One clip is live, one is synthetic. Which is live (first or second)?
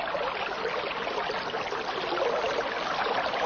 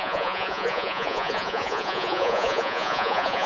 first